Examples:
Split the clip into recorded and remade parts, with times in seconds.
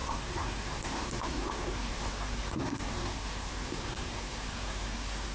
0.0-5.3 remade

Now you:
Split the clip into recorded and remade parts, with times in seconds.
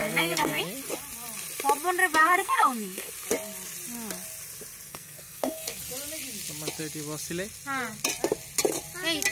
0.0-0.6 remade; 0.6-2.2 recorded; 2.2-3.1 remade; 3.1-4.9 recorded; 4.9-5.8 remade; 5.8-9.3 recorded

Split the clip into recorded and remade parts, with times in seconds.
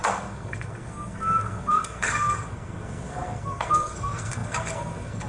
0.0-5.3 remade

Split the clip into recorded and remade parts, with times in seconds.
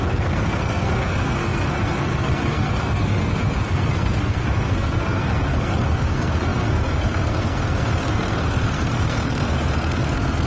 0.0-10.5 remade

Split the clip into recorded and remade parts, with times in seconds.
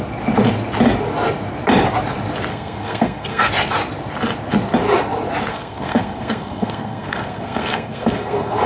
0.0-2.5 recorded; 2.5-3.5 remade; 3.5-5.5 recorded; 5.5-8.7 remade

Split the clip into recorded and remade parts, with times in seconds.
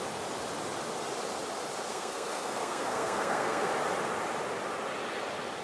0.0-1.9 recorded; 1.9-3.7 remade; 3.7-5.6 recorded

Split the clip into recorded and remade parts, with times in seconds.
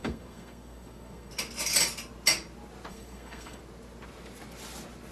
0.0-1.3 remade; 1.3-2.9 recorded; 2.9-3.6 remade; 3.6-5.1 recorded